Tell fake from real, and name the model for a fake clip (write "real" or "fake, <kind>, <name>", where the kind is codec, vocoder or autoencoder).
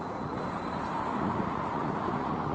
fake, vocoder, Vocos